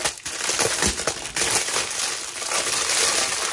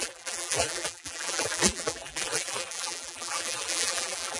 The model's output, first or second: second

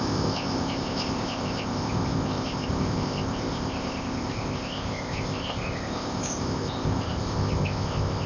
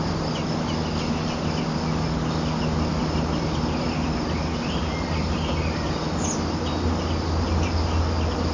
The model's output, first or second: first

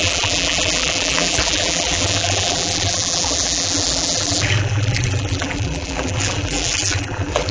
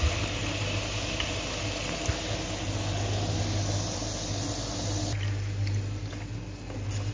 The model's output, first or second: first